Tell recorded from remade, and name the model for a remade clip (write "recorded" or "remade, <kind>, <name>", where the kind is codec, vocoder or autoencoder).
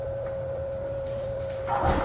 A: remade, vocoder, BigVGAN v2